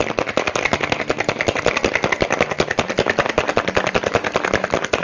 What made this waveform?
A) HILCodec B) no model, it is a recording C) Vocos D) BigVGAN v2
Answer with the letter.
B